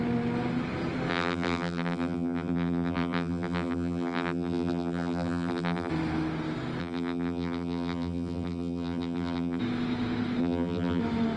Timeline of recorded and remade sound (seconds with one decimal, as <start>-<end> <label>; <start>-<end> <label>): 0.0-1.1 recorded; 1.1-5.9 remade; 5.9-6.8 recorded; 6.8-9.6 remade; 9.6-10.4 recorded; 10.4-11.0 remade; 11.0-11.4 recorded